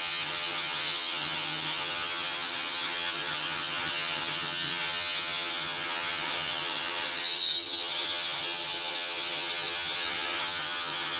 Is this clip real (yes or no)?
no